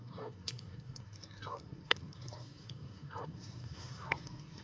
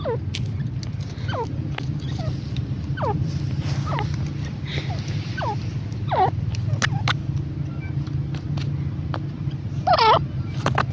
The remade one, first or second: first